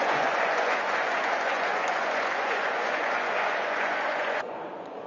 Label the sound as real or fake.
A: fake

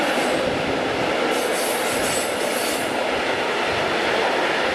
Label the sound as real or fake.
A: real